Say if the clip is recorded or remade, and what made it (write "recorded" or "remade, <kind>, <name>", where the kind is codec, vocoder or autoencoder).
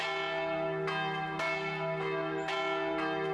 recorded